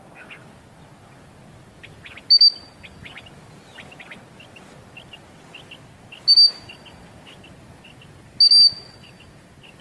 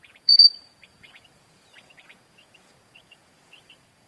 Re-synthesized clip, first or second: second